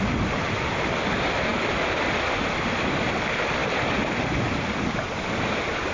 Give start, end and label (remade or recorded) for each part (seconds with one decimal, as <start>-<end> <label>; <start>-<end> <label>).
0.0-5.9 recorded